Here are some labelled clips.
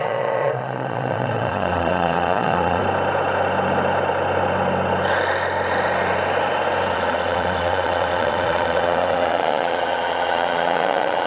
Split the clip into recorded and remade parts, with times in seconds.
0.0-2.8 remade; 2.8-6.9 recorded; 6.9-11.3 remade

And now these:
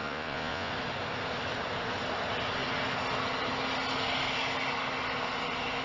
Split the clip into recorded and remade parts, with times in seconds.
0.0-0.7 remade; 0.7-5.8 recorded